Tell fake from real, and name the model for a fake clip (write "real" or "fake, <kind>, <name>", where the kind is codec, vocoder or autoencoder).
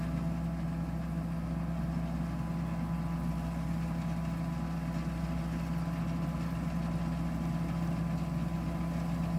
real